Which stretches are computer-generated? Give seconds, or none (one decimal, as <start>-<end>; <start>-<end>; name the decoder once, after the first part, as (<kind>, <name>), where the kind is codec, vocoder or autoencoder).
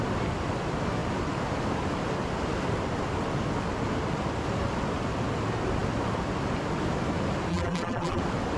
7.5-8.2 (vocoder, BigVGAN v2)